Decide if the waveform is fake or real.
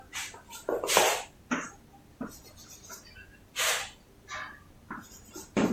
real